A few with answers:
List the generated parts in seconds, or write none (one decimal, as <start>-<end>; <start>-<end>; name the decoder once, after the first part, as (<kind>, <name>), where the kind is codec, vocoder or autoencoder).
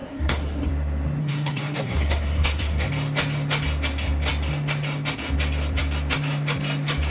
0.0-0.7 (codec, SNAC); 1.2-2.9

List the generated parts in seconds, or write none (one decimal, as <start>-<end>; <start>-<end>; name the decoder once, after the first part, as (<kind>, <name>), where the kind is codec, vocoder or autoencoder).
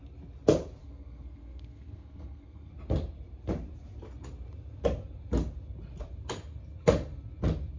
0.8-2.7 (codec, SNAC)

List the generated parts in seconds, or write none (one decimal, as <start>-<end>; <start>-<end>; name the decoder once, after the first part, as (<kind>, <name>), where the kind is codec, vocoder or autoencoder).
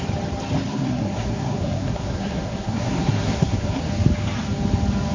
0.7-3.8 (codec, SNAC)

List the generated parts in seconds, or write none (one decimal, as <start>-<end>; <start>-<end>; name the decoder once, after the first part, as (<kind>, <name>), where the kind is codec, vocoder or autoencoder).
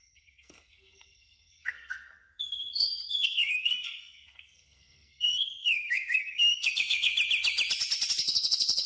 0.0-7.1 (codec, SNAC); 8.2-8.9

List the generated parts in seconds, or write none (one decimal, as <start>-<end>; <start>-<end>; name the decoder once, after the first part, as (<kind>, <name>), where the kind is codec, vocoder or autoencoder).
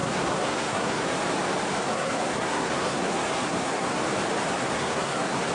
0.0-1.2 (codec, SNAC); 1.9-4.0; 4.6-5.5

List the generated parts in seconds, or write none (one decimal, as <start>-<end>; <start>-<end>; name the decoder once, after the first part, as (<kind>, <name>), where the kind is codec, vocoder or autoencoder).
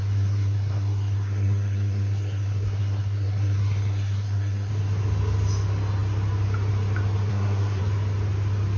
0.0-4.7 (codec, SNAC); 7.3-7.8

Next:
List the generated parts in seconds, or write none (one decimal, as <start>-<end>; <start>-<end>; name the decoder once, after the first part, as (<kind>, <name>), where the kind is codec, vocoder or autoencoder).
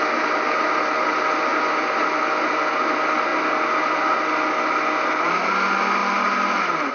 none